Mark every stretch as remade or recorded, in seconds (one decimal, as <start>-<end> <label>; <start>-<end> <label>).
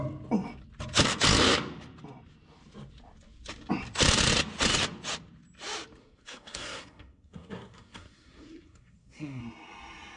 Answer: 0.0-6.0 recorded; 6.0-9.4 remade; 9.4-10.2 recorded